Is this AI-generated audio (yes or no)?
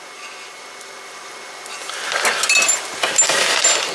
no